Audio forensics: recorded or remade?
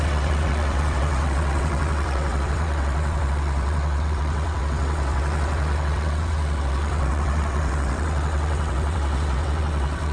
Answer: remade